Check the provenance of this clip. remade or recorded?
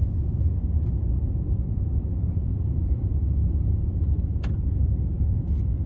recorded